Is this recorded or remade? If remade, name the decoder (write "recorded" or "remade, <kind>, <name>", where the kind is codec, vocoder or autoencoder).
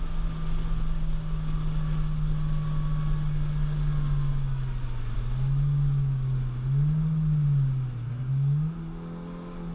recorded